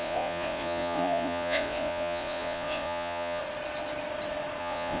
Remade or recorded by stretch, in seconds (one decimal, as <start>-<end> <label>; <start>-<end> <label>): 0.0-3.4 remade; 3.4-4.6 recorded; 4.6-5.0 remade